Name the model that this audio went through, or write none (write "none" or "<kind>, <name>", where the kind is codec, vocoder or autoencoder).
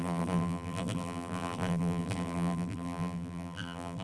vocoder, BigVGAN v2